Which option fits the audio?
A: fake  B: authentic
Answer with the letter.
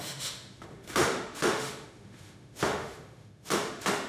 A